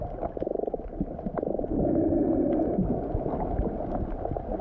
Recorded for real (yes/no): yes